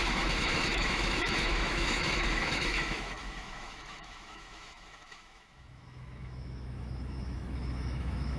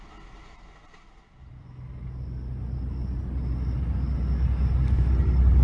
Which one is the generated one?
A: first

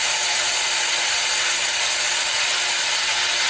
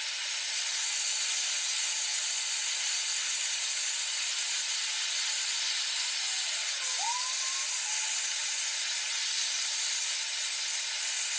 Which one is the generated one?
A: first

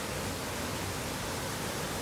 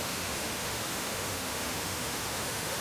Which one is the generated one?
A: second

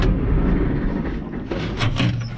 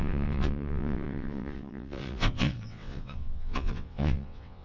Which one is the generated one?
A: second